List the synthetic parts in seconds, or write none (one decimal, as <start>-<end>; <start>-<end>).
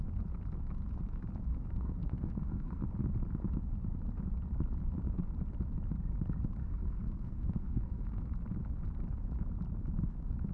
1.5-2.8; 6.6-8.2